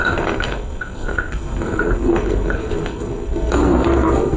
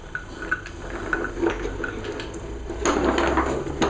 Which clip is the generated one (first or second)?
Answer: first